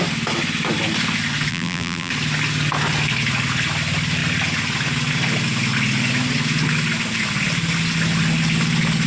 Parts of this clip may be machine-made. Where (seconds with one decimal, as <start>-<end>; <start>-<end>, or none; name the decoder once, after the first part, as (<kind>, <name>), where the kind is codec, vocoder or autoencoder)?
1.5-2.1 (vocoder, BigVGAN v2)